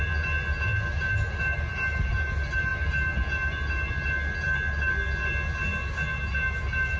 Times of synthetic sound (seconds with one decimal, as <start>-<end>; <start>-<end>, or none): none